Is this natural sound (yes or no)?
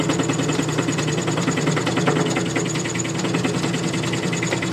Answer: yes